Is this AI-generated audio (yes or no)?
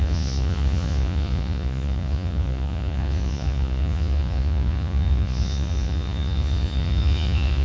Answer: yes